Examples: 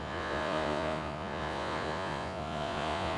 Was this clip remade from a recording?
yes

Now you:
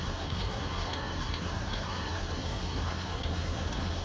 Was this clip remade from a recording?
yes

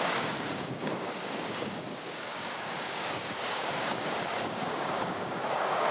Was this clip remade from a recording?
yes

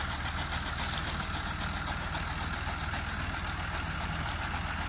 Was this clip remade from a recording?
no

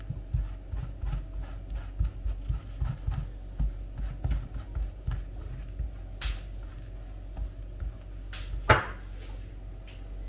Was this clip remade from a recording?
no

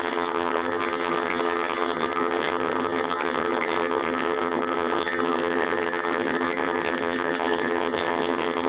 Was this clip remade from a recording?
yes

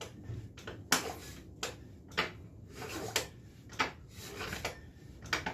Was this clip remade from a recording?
no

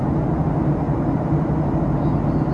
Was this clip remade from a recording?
no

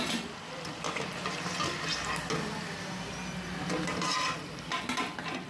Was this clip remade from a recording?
no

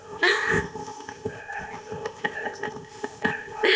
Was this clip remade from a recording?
yes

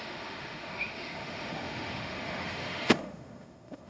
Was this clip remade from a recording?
yes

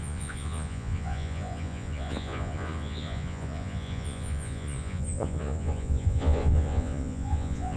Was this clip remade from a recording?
yes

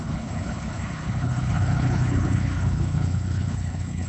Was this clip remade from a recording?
yes